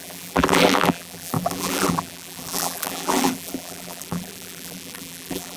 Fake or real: fake